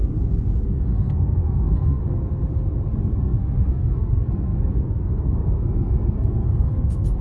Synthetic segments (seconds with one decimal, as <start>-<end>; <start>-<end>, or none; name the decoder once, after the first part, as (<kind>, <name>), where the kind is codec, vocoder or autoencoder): 0.6-2.0 (codec, SNAC); 3.2-7.2